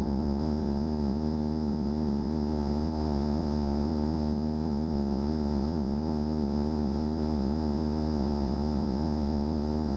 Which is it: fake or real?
fake